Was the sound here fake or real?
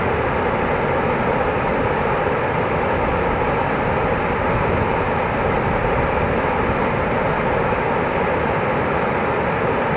real